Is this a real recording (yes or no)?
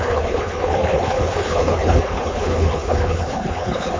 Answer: no